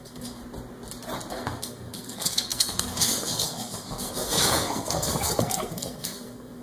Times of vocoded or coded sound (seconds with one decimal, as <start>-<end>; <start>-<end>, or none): 0.0-0.4; 1.3-6.6